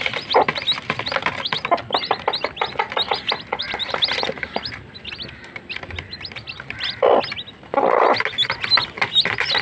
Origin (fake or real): real